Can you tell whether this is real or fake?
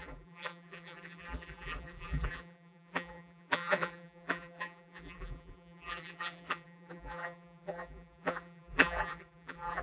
fake